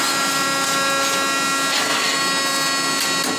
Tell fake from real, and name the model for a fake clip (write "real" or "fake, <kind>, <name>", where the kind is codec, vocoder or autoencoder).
real